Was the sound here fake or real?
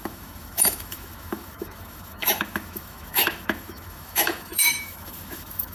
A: fake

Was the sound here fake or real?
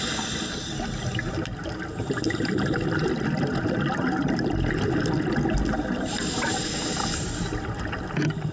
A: real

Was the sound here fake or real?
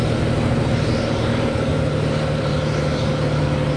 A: real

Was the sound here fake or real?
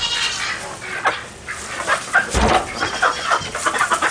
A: fake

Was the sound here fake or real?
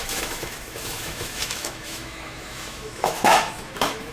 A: fake